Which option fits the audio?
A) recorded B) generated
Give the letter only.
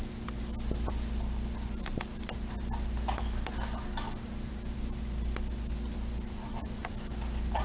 A